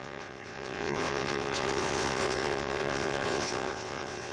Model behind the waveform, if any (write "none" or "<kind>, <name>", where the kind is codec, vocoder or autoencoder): vocoder, WaveNeXt